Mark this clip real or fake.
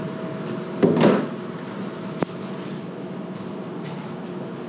real